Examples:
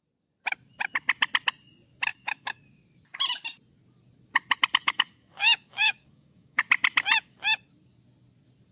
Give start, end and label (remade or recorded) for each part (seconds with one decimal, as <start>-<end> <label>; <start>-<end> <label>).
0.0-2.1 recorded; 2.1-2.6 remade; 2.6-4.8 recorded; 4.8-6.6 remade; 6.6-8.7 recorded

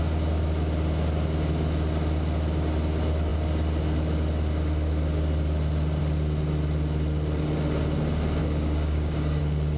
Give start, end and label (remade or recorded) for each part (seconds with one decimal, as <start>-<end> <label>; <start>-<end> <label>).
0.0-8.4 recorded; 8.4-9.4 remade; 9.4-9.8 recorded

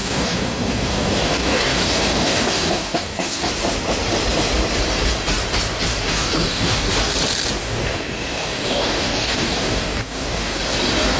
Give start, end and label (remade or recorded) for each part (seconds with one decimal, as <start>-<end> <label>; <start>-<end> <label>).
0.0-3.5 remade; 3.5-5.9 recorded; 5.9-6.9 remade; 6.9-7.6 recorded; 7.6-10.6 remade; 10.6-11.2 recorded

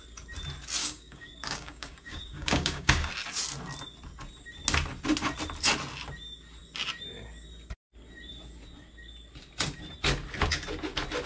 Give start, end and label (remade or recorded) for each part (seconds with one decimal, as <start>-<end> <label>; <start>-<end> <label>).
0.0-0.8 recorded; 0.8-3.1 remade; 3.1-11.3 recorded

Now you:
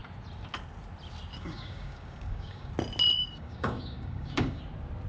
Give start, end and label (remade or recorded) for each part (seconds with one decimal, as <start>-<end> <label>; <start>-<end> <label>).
0.0-1.3 recorded; 1.3-2.7 remade; 2.7-3.2 recorded; 3.2-4.6 remade; 4.6-5.1 recorded